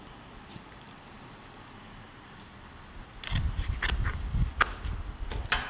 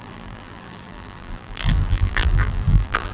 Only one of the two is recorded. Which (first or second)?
first